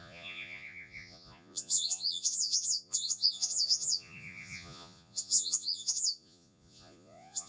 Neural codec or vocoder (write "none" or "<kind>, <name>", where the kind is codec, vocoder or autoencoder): vocoder, Vocos